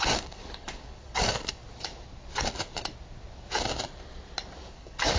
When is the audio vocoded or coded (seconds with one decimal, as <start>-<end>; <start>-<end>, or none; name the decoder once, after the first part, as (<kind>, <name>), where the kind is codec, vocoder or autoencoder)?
0.0-1.6 (codec, DAC); 4.7-5.2